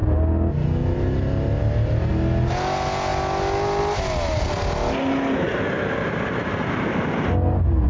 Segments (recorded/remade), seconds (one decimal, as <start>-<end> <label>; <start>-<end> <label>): 0.0-7.9 recorded